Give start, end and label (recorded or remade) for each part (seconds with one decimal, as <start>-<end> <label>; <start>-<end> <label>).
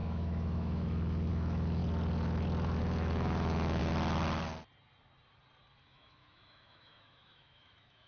0.0-1.8 remade; 1.8-2.8 recorded; 2.8-3.8 remade; 3.8-5.8 recorded; 5.8-8.1 remade